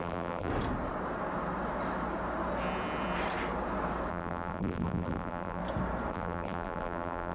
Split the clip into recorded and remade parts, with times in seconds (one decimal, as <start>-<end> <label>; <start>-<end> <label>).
0.0-0.5 remade; 0.5-4.1 recorded; 4.1-5.6 remade; 5.6-6.1 recorded; 6.1-7.3 remade